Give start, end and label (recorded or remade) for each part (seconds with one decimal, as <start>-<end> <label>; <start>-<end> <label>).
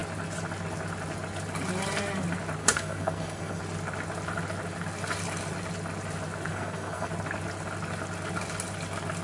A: 0.0-2.6 recorded; 2.6-3.6 remade; 3.6-6.5 recorded; 6.5-7.1 remade; 7.1-9.2 recorded